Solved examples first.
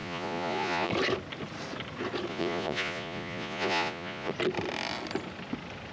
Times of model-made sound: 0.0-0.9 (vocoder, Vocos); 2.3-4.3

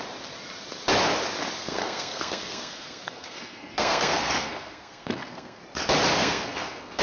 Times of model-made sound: 1.6-5.6 (codec, SNAC); 6.2-7.0